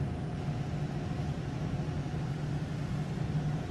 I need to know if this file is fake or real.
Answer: real